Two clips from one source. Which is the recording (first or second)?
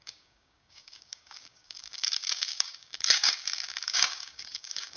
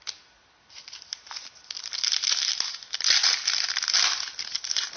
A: second